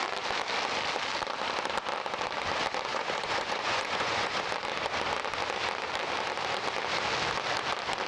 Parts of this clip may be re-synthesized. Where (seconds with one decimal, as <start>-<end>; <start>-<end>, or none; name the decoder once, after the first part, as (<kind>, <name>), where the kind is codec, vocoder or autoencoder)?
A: 2.9-4.4 (vocoder, Vocos)